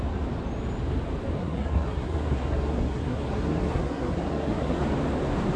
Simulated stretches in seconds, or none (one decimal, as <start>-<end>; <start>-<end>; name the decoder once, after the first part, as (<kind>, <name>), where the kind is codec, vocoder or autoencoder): 1.4-4.8 (codec, SNAC)